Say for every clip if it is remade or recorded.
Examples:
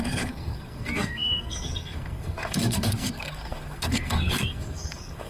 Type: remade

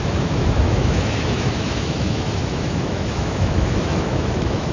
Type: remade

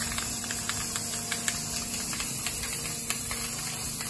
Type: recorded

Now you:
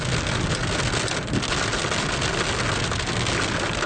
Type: recorded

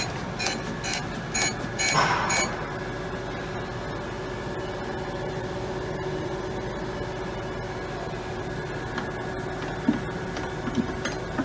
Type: recorded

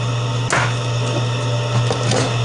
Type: recorded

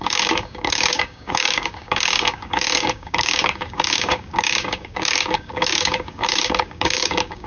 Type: remade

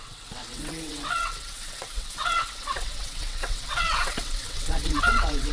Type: remade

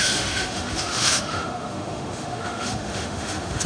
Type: remade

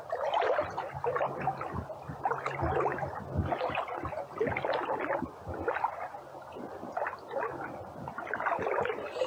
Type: recorded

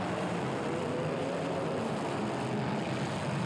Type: recorded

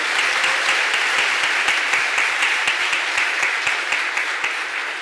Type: recorded